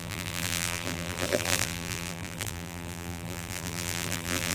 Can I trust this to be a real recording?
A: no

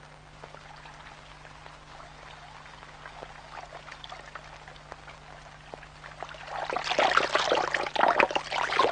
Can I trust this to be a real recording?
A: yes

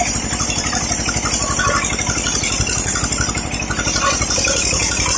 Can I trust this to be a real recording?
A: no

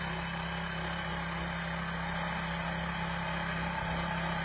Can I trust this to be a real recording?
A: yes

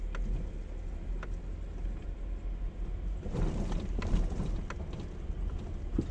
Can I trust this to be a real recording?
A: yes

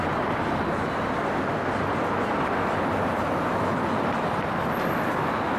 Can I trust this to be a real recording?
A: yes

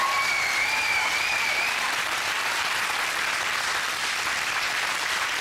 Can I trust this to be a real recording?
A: no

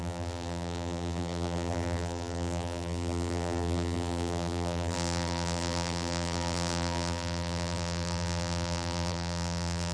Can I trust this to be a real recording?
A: no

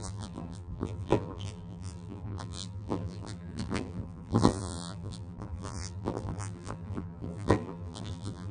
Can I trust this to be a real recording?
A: no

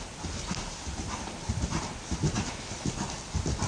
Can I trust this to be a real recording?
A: yes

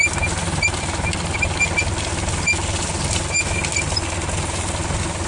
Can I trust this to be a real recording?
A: yes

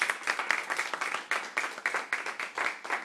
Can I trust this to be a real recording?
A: yes